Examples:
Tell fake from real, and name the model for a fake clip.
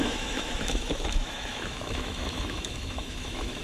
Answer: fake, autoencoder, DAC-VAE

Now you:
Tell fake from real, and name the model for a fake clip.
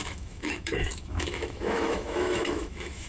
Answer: fake, autoencoder, DAC-VAE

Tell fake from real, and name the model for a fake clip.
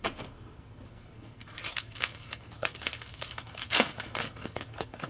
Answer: fake, codec, SNAC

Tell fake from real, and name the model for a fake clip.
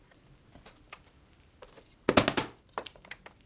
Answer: real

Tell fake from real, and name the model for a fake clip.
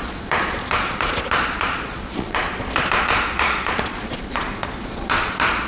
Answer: fake, vocoder, Vocos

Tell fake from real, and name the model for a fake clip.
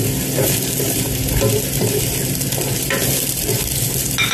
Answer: real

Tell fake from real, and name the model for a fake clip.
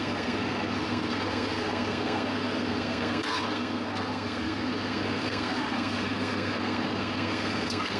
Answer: fake, codec, SNAC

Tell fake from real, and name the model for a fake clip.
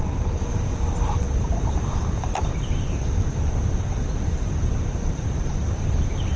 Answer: fake, vocoder, BigVGAN v2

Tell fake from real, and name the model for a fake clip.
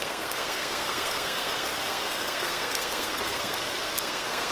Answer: fake, codec, SNAC